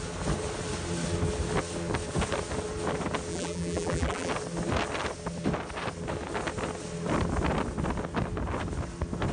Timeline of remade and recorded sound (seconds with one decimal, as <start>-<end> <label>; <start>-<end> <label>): 0.0-3.3 recorded; 3.3-4.3 remade; 4.3-9.3 recorded